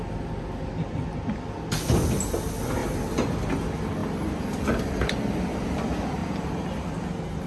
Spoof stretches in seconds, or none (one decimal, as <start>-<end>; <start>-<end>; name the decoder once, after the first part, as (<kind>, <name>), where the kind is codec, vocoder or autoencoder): 2.8-3.4 (vocoder, BigVGAN v2); 4.0-5.4; 6.2-6.9